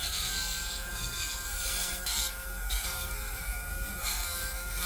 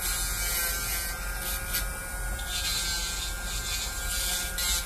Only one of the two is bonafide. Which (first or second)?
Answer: second